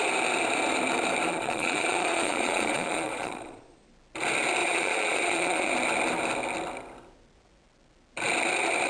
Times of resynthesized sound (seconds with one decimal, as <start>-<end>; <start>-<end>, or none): 1.3-3.9; 4.6-5.7